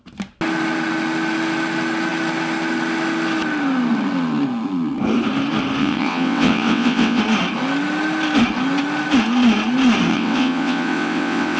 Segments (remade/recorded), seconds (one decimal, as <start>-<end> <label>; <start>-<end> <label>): 0.0-5.8 recorded; 5.8-7.2 remade; 7.2-10.1 recorded; 10.1-11.6 remade